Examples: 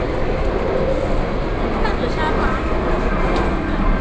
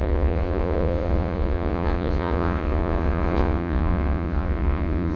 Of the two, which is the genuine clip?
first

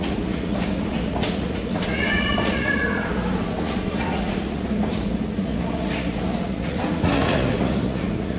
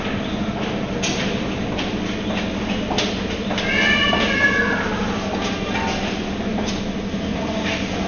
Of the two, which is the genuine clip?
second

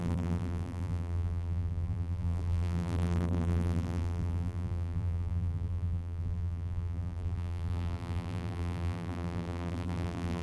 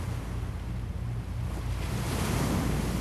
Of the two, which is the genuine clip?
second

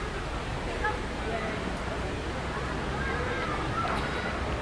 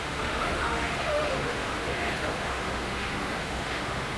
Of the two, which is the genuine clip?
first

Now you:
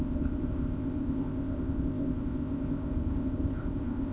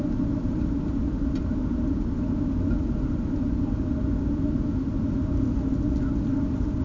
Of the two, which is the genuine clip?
second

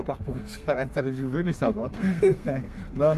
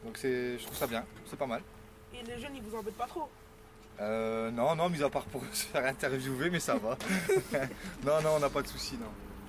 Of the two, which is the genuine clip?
second